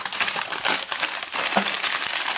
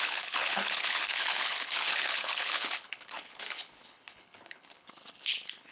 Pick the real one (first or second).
first